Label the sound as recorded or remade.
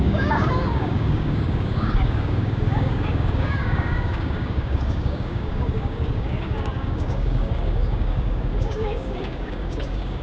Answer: remade